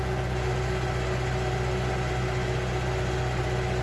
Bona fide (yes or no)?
yes